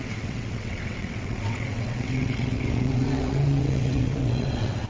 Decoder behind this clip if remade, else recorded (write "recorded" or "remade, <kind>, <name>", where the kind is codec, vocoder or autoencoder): remade, vocoder, WaveNeXt